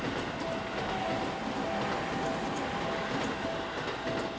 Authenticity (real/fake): real